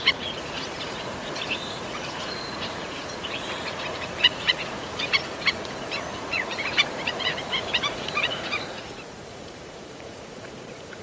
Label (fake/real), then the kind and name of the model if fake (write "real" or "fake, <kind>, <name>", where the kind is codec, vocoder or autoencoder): fake, vocoder, Vocos